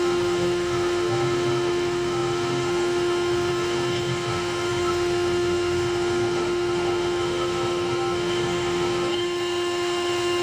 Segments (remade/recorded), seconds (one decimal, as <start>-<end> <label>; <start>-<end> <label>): 0.0-10.4 remade